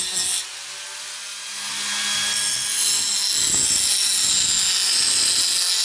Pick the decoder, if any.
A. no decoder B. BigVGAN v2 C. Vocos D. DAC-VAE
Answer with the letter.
A